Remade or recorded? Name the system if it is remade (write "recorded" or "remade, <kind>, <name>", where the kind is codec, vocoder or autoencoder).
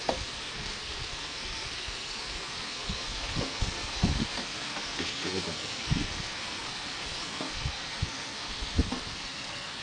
remade, codec, SNAC